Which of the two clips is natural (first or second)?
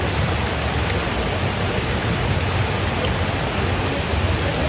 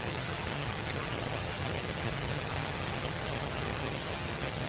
first